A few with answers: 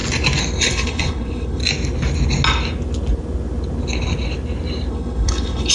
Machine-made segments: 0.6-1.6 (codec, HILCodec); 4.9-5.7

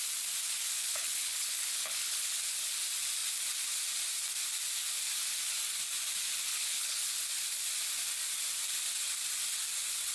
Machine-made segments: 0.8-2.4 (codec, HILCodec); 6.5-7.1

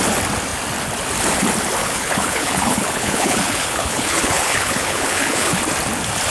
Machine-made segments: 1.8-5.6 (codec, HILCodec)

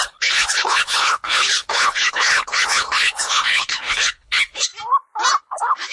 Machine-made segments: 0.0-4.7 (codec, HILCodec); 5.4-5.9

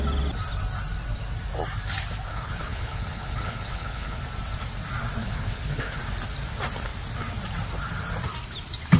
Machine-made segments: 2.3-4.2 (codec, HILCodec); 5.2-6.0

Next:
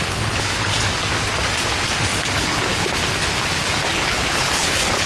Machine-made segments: 0.0-0.9 (codec, HILCodec); 2.2-2.7; 3.9-5.1

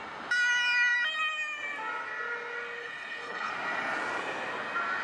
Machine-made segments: 2.8-3.5 (codec, HILCodec)